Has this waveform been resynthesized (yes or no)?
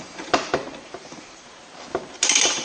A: yes